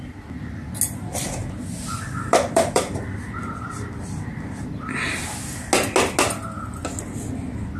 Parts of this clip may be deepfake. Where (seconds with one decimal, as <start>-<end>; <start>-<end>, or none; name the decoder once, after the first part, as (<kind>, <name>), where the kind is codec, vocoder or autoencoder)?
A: 1.4-4.7 (vocoder, BigVGAN v2)